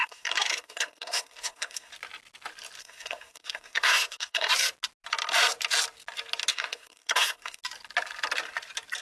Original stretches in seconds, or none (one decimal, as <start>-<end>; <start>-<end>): 1.9-2.8; 4.5-6.5; 7.6-9.0